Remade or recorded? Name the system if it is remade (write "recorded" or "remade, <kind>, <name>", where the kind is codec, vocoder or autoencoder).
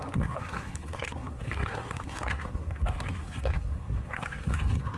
remade, codec, SNAC